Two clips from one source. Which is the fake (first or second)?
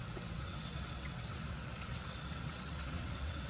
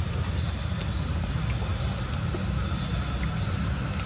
first